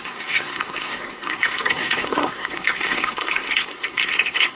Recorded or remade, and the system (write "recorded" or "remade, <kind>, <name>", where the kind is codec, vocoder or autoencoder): remade, codec, SNAC